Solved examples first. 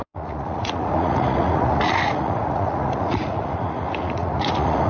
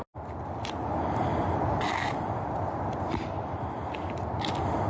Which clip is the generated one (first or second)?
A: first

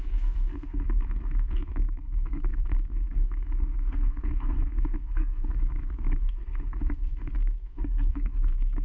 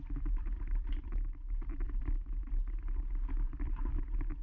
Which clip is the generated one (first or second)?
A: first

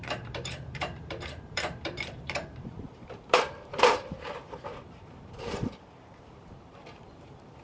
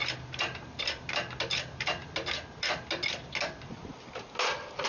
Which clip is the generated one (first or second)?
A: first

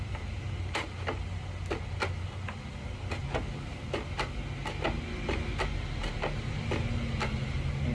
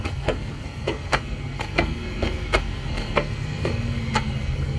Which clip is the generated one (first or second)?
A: second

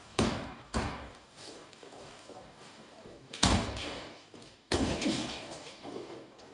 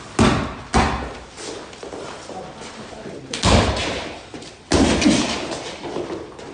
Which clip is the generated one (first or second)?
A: first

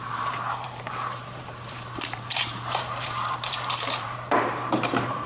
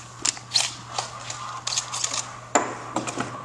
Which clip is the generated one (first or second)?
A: first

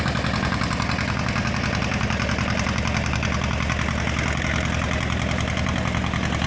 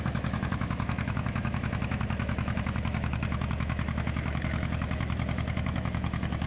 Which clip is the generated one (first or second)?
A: second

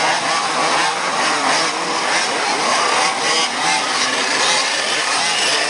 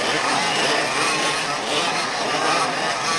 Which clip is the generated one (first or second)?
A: second